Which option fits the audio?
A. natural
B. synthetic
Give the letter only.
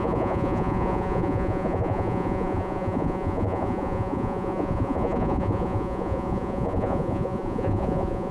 B